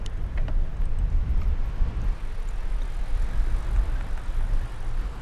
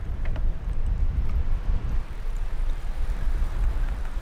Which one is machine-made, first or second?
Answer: second